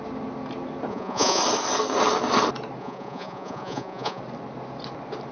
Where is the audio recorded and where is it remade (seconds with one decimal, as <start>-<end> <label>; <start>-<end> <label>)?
0.0-0.9 recorded; 0.9-1.4 remade; 1.4-2.8 recorded; 2.8-4.2 remade; 4.2-5.3 recorded